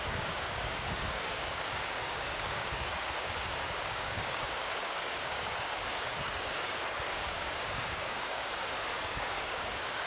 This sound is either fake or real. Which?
fake